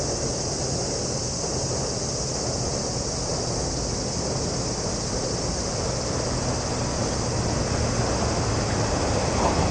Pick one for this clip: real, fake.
real